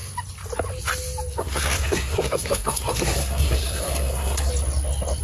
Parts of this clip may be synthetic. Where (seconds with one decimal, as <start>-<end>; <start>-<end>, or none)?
1.4-4.5

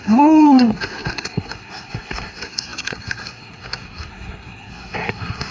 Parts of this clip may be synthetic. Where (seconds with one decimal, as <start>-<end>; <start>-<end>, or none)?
0.0-5.5

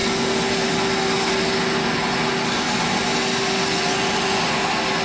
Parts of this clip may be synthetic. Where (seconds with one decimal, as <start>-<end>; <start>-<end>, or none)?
none